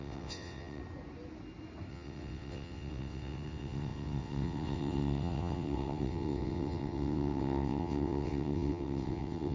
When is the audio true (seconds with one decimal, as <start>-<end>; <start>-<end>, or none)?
0.8-1.9